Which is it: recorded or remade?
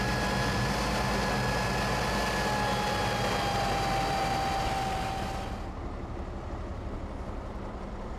recorded